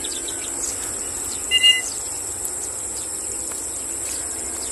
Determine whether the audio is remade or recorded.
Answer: recorded